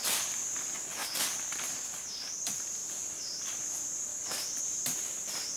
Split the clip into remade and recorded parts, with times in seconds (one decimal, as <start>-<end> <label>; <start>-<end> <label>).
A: 0.0-2.8 recorded; 2.8-3.4 remade; 3.4-4.1 recorded; 4.1-4.6 remade; 4.6-5.6 recorded